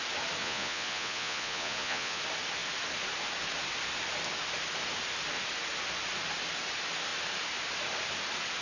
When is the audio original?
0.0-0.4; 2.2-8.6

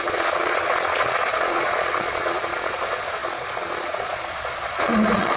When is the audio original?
none

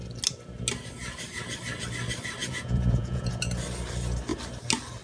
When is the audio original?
0.0-2.4; 3.3-5.0